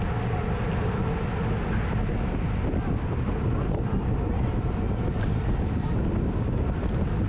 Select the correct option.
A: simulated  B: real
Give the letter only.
B